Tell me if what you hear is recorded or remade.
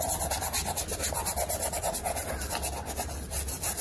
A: recorded